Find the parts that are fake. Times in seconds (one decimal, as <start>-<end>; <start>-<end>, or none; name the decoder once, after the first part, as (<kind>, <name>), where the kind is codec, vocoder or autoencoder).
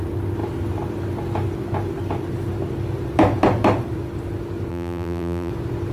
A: 4.7-5.5 (vocoder, BigVGAN v2)